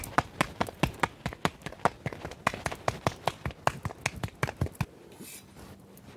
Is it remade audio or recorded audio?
recorded